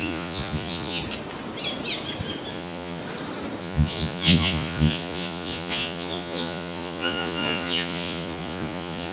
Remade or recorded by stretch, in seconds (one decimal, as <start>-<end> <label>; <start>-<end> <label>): 0.0-1.0 remade; 1.0-2.5 recorded; 2.5-3.0 remade; 3.0-3.6 recorded; 3.6-9.1 remade